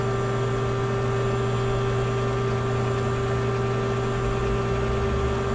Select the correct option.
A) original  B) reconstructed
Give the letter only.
A